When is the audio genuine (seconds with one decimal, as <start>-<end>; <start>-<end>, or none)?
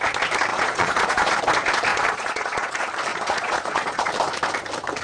0.0-0.5; 1.3-1.9; 2.7-3.1; 4.1-5.0